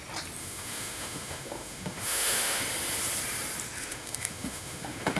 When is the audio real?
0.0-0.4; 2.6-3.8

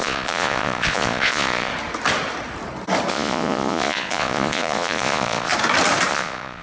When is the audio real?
1.7-3.1; 5.5-6.1